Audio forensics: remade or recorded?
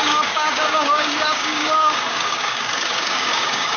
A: remade